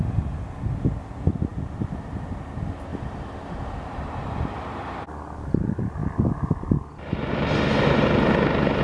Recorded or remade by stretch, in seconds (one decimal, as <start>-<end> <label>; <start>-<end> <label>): 0.0-1.5 recorded; 1.5-2.5 remade; 2.5-2.9 recorded; 2.9-4.4 remade; 4.4-8.8 recorded